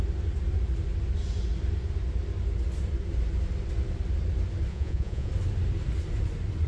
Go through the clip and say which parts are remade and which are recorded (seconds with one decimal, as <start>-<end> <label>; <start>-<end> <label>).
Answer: 0.0-4.7 recorded; 4.7-5.3 remade; 5.3-6.7 recorded